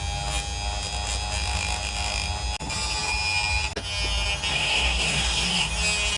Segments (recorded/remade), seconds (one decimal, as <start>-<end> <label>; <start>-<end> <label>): 0.0-4.5 recorded; 4.5-5.7 remade; 5.7-6.2 recorded